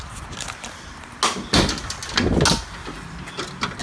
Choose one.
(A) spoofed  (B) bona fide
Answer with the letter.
B